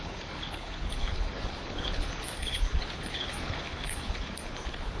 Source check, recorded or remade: remade